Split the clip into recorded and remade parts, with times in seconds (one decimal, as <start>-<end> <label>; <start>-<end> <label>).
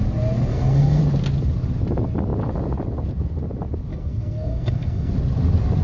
0.0-0.5 recorded; 0.5-1.0 remade; 1.0-3.9 recorded; 3.9-5.1 remade; 5.1-5.8 recorded